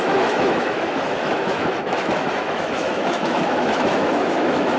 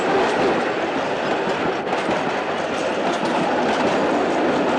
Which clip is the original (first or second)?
second